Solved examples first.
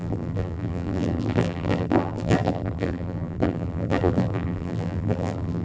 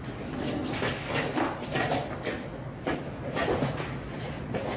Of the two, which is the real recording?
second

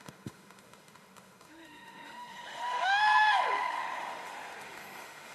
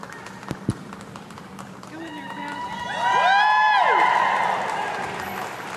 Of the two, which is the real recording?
second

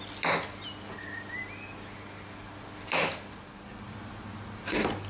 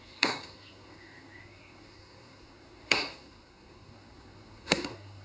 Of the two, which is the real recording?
first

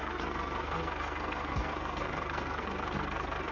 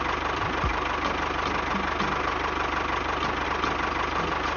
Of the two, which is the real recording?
second